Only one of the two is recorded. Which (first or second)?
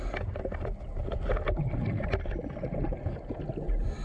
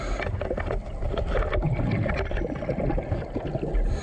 first